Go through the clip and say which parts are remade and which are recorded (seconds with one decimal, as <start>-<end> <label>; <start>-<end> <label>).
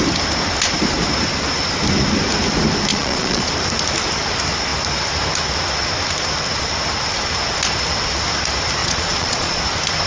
0.0-2.9 recorded; 2.9-3.5 remade; 3.5-8.8 recorded; 8.8-9.6 remade; 9.6-10.1 recorded